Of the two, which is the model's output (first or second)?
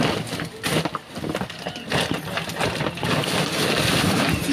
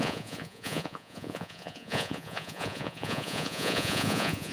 second